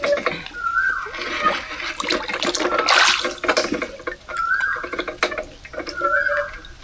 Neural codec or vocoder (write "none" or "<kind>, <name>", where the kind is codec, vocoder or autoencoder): none